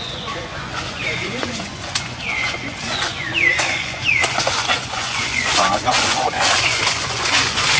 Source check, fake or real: fake